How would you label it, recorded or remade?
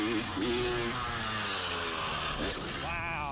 recorded